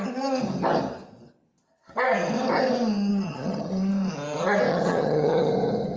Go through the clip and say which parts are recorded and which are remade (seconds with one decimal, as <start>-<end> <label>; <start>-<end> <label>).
0.0-3.1 recorded; 3.1-3.9 remade; 3.9-4.7 recorded; 4.7-5.5 remade; 5.5-6.0 recorded